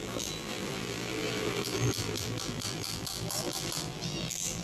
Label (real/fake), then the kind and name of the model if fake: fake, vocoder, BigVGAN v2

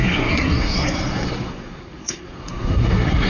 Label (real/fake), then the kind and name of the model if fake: fake, codec, SNAC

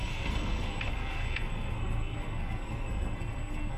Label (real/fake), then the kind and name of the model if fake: fake, codec, SNAC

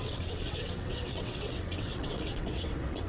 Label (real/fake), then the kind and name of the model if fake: fake, vocoder, WaveNeXt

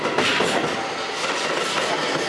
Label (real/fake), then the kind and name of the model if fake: real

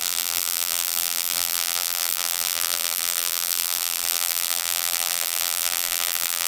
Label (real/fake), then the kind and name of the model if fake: fake, vocoder, BigVGAN v2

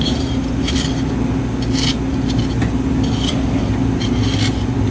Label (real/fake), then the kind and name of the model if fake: real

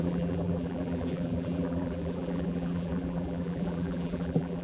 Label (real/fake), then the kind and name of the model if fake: fake, vocoder, BigVGAN v2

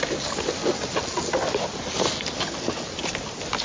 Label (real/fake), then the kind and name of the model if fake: real